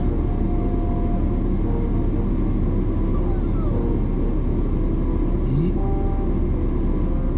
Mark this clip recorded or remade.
recorded